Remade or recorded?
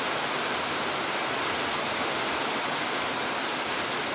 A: recorded